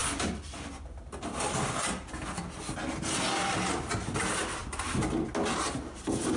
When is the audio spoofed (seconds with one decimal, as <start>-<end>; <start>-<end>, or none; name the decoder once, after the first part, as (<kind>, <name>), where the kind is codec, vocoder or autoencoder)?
none